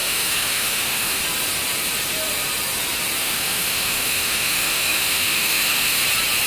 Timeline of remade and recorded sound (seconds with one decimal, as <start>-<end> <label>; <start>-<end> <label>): 0.0-1.2 remade; 1.2-3.2 recorded; 3.2-6.0 remade; 6.0-6.5 recorded

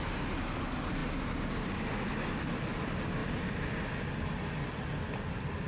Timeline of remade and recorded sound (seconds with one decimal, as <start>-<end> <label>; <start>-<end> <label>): 0.0-5.7 recorded

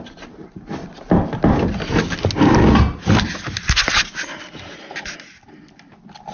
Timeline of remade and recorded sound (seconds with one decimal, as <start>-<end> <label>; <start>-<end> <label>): 0.0-6.3 recorded

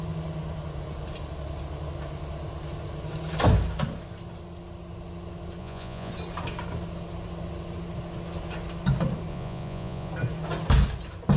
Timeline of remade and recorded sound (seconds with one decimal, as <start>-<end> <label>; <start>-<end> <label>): 0.0-5.6 recorded; 5.6-6.1 remade; 6.1-9.3 recorded; 9.3-10.1 remade; 10.1-11.4 recorded

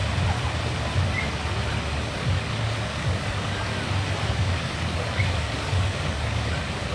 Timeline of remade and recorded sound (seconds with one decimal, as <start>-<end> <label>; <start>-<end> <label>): 0.0-2.1 recorded; 2.1-3.7 remade; 3.7-4.3 recorded; 4.3-6.9 remade

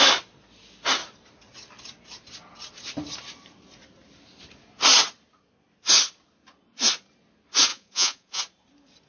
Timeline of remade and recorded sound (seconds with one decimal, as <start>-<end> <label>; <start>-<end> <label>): 0.0-7.7 recorded; 7.7-8.4 remade; 8.4-9.1 recorded

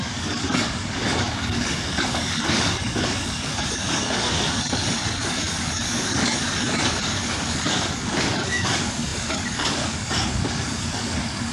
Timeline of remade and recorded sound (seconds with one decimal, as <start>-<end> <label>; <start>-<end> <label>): 0.0-11.5 remade

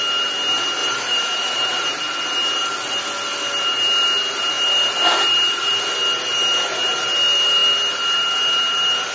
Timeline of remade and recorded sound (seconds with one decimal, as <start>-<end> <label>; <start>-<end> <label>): 0.0-0.8 recorded; 0.8-2.0 remade; 2.0-9.1 recorded